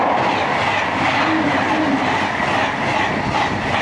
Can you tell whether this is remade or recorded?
recorded